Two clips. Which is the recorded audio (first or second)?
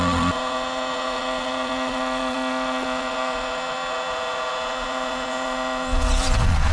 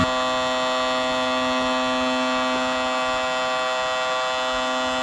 second